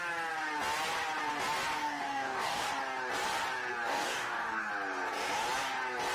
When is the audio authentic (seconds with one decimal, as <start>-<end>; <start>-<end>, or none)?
0.0-1.8; 2.7-3.9; 4.7-6.1